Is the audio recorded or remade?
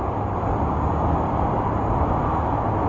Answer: recorded